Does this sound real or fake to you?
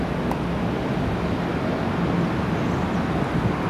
real